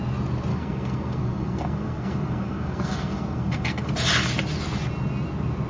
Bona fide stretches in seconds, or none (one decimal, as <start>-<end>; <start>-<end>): 0.0-0.5; 3.9-5.7